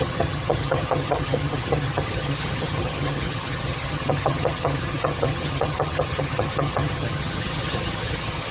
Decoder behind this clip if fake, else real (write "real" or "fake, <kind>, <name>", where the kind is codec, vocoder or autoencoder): fake, vocoder, HiFi-GAN